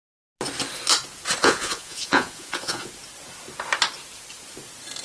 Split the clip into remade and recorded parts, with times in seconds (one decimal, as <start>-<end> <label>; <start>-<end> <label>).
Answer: 0.0-1.4 recorded; 1.4-2.9 remade; 2.9-5.0 recorded